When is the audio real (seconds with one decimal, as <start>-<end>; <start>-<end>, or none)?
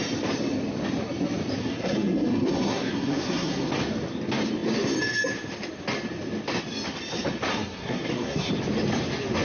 0.0-1.6; 3.7-7.5; 8.5-9.4